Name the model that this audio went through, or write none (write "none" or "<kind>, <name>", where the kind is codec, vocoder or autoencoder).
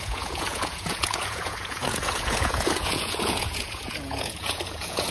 vocoder, Vocos